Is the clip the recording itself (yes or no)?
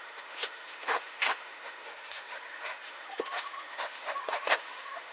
no